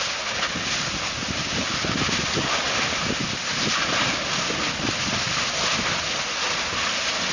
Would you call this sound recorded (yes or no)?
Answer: yes